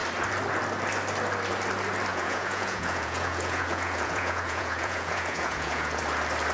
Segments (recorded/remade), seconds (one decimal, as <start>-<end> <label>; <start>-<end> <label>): 0.0-2.1 recorded; 2.1-6.0 remade; 6.0-6.5 recorded